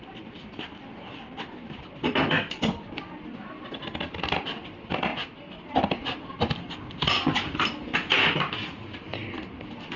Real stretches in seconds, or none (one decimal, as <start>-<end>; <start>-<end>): 0.0-10.0